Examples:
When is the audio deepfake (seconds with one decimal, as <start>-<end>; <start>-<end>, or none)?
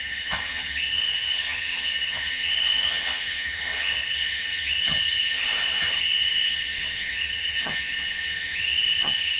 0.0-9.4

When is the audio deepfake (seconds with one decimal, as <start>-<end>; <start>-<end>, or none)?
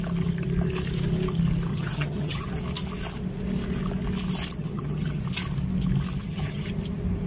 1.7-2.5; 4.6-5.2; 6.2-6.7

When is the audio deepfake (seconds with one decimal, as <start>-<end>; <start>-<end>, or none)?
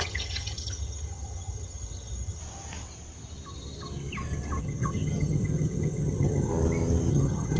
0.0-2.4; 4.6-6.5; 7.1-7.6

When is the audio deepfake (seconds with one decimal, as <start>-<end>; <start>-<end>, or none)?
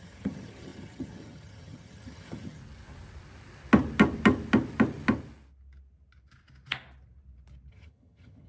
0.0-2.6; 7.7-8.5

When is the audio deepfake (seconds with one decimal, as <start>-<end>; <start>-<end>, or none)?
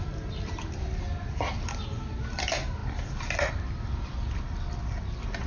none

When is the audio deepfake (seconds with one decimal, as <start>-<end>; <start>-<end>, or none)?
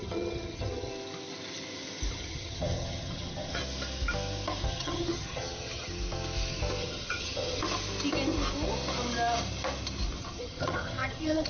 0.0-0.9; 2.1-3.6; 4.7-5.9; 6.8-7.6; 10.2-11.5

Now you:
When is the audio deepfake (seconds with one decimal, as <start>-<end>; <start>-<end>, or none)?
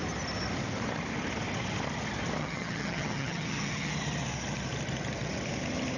2.4-3.9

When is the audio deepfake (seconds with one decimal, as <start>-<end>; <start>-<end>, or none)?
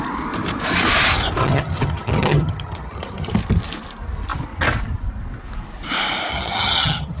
1.4-3.3; 6.3-7.2